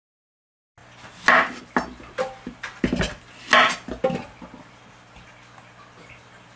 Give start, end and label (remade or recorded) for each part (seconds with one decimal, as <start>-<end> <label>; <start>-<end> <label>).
0.0-6.6 recorded